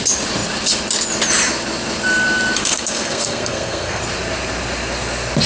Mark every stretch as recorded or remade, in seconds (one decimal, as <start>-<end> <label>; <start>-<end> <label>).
0.0-2.6 recorded; 2.6-4.0 remade; 4.0-5.5 recorded